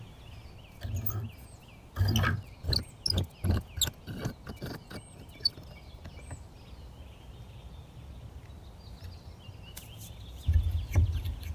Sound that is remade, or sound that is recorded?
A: recorded